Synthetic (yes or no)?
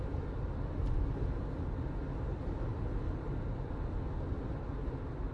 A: no